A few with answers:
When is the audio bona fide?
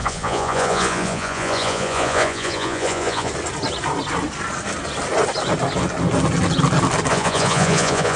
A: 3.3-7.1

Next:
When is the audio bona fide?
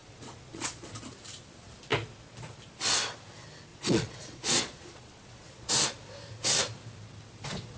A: 0.9-3.7; 5.7-7.8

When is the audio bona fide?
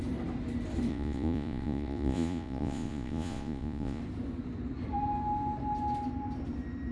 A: 0.0-0.9; 4.0-6.9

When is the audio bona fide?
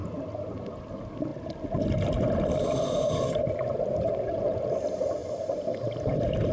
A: 0.0-6.5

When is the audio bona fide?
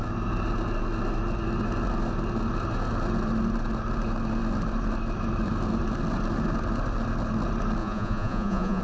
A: 0.0-7.8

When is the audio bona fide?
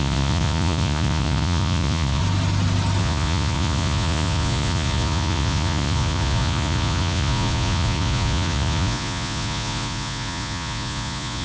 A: 2.2-3.0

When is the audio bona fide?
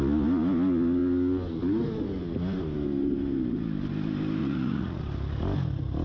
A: 0.0-4.4; 5.0-6.0